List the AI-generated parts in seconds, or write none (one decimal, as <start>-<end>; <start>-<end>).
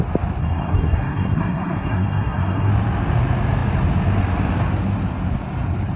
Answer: 0.4-2.7